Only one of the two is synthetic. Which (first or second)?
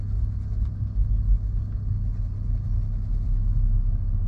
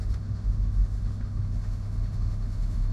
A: second